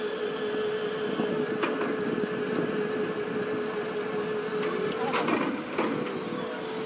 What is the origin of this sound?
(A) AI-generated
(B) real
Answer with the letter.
B